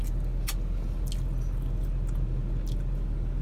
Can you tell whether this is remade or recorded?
recorded